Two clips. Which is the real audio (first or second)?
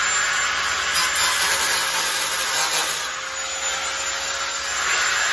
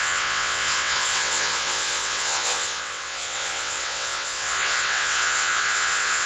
first